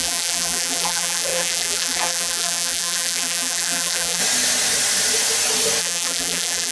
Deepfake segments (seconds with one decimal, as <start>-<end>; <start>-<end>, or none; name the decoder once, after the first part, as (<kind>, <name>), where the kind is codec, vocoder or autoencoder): 0.0-4.2 (vocoder, BigVGAN v2); 5.8-6.7